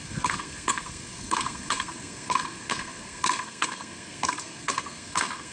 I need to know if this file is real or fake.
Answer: fake